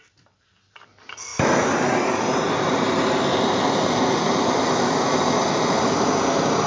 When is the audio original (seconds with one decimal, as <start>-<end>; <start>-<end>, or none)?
0.0-6.7